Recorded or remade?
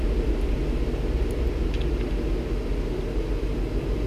recorded